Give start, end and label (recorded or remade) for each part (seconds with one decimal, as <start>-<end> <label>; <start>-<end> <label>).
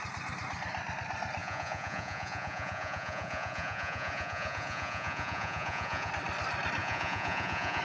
0.0-1.4 recorded; 1.4-6.1 remade; 6.1-6.8 recorded; 6.8-7.8 remade